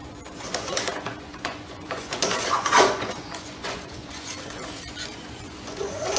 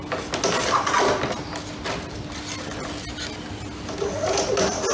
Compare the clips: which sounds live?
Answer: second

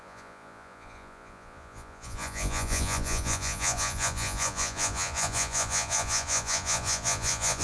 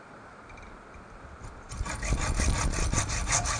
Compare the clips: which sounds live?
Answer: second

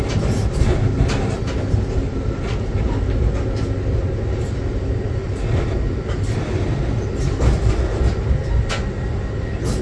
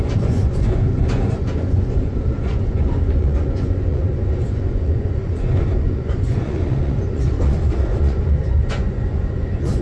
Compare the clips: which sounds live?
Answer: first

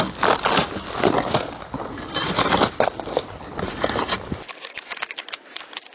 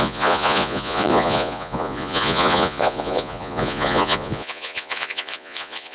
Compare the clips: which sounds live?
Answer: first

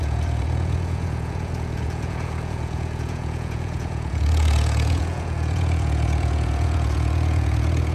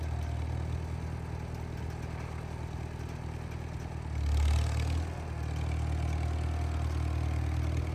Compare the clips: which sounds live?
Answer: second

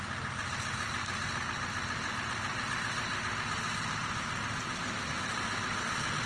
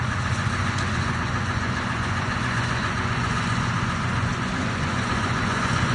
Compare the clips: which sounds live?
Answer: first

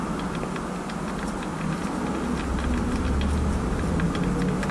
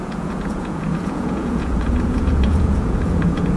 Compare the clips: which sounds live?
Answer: first